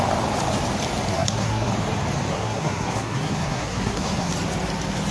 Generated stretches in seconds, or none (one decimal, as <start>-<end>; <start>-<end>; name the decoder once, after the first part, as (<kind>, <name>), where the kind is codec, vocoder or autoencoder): 1.1-1.7 (codec, SNAC); 2.3-4.3